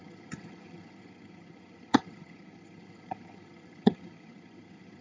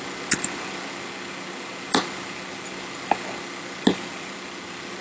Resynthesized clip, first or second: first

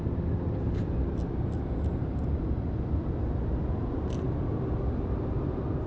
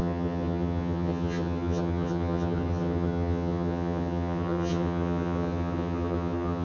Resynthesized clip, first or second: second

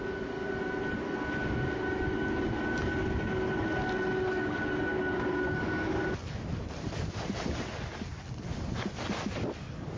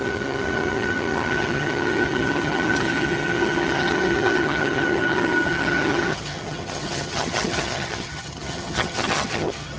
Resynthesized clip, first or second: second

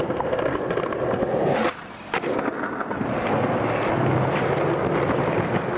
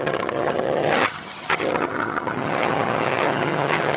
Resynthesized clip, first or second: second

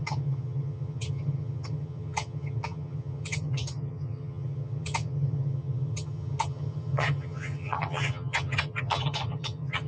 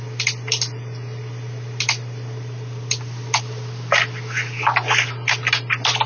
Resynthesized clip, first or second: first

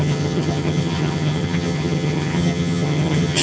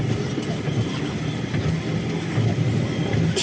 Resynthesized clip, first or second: first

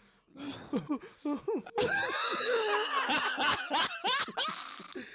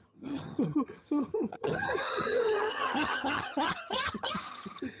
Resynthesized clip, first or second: second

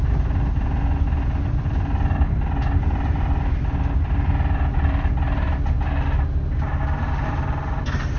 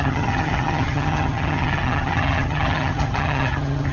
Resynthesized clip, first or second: second